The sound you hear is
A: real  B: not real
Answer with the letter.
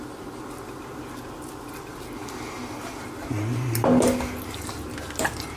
A